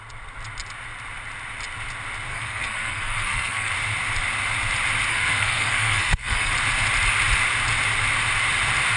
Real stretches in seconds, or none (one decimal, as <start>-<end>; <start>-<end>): 0.0-2.3; 3.7-5.1; 6.5-9.0